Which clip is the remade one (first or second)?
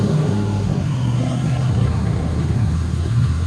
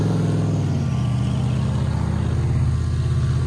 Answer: first